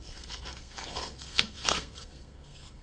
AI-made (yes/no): yes